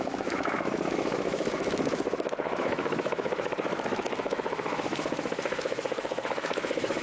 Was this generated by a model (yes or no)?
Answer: yes